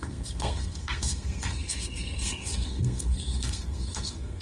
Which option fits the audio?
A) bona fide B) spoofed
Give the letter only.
B